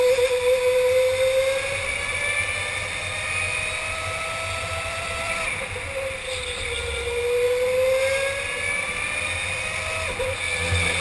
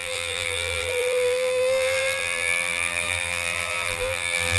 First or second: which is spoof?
second